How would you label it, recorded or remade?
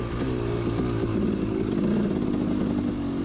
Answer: recorded